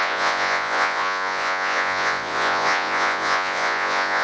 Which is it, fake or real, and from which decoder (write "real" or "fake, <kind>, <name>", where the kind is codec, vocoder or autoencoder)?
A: fake, vocoder, Vocos